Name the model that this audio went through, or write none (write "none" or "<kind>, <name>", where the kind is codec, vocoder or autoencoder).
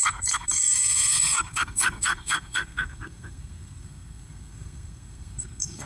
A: codec, SNAC